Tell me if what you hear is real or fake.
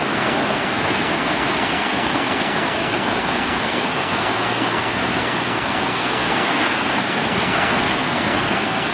fake